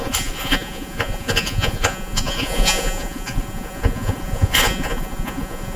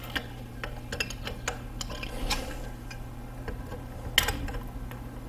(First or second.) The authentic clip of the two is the second